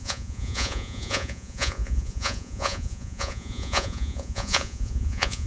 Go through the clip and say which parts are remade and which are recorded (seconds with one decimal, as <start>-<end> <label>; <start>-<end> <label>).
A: 0.0-5.5 remade